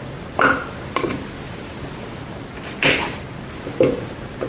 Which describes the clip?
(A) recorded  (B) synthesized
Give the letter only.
A